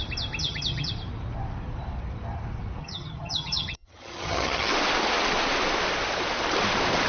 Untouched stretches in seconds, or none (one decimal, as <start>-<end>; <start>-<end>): 0.0-0.4; 0.9-2.8; 4.7-7.1